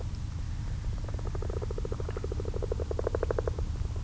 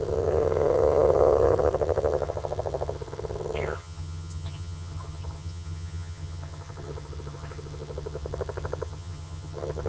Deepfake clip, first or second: second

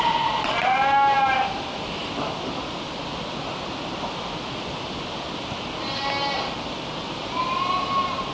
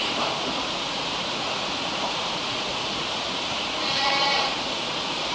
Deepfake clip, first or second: second